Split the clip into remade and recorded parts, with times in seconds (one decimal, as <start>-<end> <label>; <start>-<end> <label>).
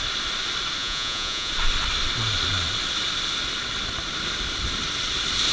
0.0-0.8 recorded; 0.8-1.5 remade; 1.5-5.5 recorded